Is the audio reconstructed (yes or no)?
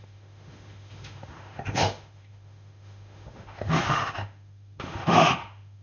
yes